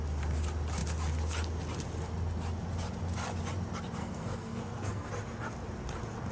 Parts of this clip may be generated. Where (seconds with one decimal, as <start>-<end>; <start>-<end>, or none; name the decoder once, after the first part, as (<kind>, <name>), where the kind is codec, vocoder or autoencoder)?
4.0-5.1 (codec, SNAC)